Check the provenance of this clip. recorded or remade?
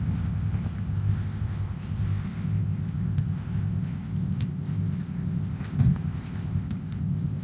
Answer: remade